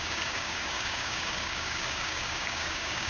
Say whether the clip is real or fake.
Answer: fake